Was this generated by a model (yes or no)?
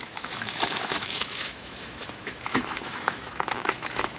yes